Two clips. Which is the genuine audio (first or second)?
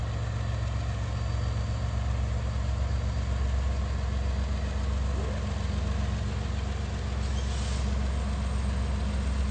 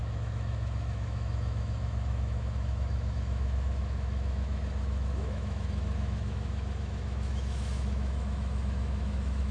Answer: first